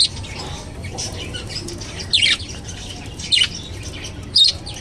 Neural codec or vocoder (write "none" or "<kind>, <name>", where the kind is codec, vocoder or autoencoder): none